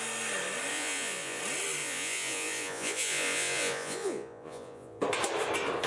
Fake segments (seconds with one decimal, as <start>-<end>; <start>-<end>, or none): 0.7-1.4; 1.8-5.0